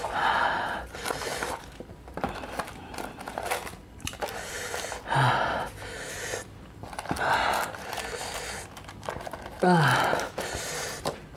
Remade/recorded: recorded